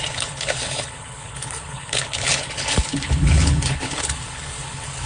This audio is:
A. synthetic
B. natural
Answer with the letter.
A